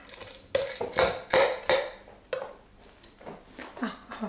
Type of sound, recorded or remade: recorded